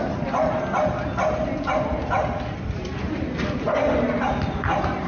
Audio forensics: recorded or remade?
recorded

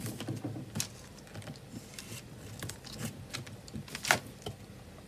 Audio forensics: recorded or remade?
recorded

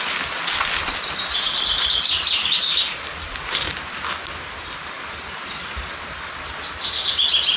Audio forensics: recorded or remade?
recorded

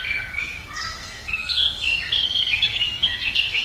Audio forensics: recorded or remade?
remade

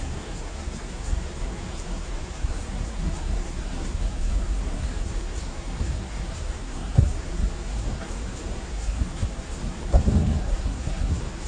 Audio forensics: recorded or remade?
remade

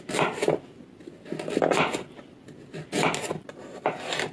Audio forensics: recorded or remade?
recorded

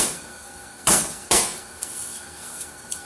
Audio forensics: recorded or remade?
remade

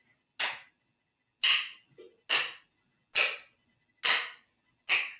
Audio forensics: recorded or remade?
recorded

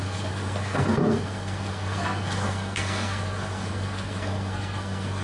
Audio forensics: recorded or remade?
remade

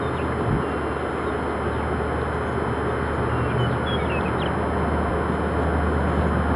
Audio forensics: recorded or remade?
recorded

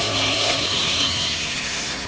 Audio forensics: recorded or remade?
remade